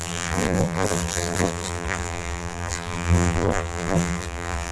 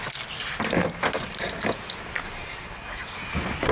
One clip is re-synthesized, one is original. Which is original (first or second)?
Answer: second